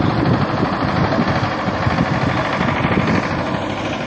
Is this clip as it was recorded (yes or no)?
yes